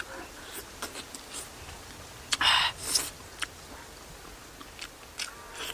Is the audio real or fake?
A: real